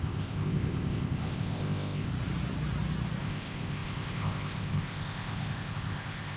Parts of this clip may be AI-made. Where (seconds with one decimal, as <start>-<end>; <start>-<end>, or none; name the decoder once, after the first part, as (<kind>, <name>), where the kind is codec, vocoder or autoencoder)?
0.0-2.1 (codec, ZipCodec); 3.2-6.4